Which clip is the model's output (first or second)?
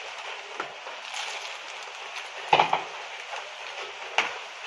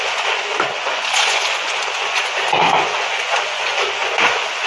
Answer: second